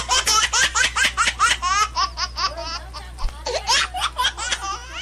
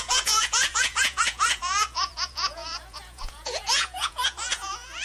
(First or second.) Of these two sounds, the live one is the first